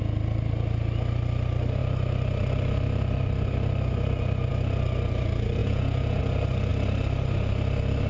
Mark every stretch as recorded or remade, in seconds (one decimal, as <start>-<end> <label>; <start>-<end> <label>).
0.0-5.6 recorded; 5.6-6.2 remade; 6.2-8.1 recorded